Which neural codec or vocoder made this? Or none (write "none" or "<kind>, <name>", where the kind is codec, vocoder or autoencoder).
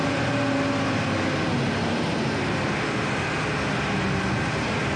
none